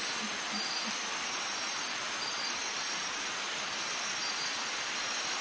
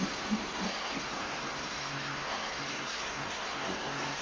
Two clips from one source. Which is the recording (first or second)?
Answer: first